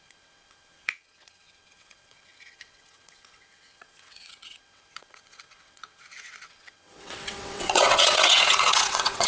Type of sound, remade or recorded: remade